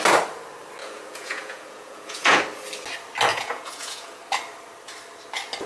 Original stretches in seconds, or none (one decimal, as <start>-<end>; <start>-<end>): 0.0-0.8; 2.4-3.3; 4.2-5.7